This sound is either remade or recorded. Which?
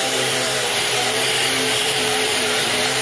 remade